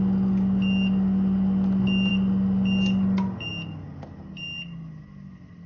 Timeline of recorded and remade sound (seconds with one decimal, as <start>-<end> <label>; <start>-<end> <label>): 0.0-5.7 recorded